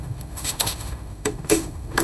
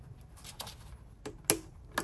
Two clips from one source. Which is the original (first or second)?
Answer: second